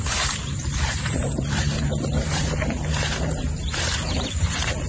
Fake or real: fake